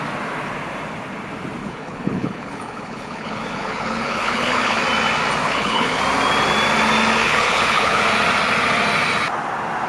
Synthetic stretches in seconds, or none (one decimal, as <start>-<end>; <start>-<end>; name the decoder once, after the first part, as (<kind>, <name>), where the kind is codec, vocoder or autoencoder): 1.6-4.8 (codec, HILCodec); 5.4-6.0; 7.2-8.0